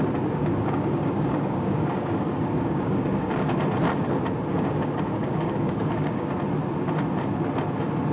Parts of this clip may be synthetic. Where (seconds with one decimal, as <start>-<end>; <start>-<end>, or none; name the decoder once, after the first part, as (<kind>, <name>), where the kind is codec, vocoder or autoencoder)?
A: 0.4-3.6 (codec, DAC); 4.5-6.3